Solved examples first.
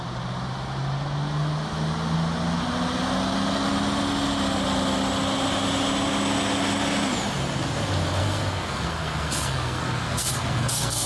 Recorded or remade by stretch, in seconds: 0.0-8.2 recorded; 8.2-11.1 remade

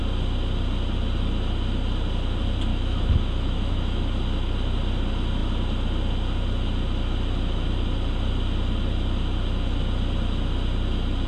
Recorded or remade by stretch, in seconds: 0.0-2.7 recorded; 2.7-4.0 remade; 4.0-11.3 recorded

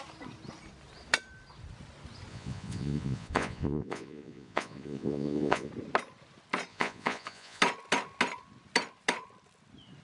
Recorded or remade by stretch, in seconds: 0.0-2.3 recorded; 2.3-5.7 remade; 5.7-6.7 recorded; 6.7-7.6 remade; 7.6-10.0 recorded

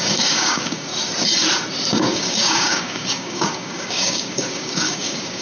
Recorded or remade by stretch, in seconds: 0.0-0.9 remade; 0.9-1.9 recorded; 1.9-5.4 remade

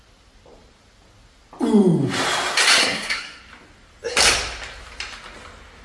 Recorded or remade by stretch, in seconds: 0.0-2.8 recorded; 2.8-3.4 remade; 3.4-5.8 recorded

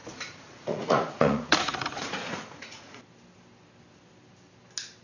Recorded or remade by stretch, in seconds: 0.0-3.0 remade; 3.0-5.0 recorded

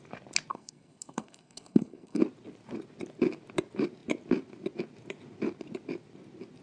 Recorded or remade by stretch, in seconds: 0.0-0.5 recorded; 0.5-2.2 remade; 2.2-6.6 recorded

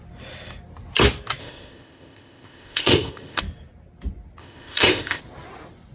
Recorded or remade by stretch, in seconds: 0.0-1.4 recorded; 1.4-3.4 remade; 3.4-4.4 recorded; 4.4-5.2 remade; 5.2-5.9 recorded